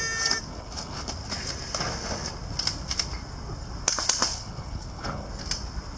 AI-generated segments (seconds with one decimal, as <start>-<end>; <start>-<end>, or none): 0.5-1.1; 4.3-5.3